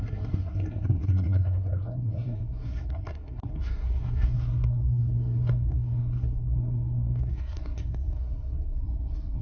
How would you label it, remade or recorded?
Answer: remade